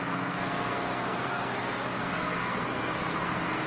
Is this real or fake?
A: fake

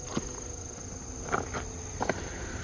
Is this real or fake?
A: real